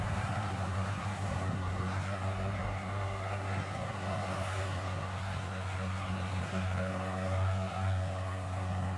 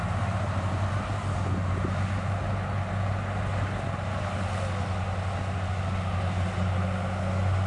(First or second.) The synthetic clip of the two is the first